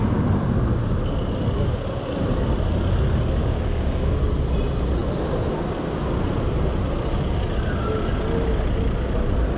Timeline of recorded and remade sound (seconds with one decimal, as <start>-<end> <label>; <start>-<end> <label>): 0.0-3.4 recorded; 3.4-4.2 remade; 4.2-9.6 recorded